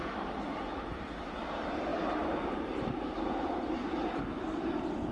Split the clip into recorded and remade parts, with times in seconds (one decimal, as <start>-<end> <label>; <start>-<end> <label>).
0.0-0.6 recorded; 0.6-3.8 remade; 3.8-5.1 recorded